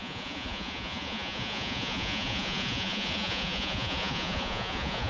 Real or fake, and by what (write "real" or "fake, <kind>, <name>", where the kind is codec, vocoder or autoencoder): fake, vocoder, Vocos